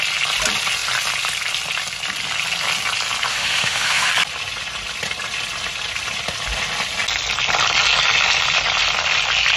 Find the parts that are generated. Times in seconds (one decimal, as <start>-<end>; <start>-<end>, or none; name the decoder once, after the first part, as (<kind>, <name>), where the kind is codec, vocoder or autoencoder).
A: 3.3-4.1 (autoencoder, DAC-VAE)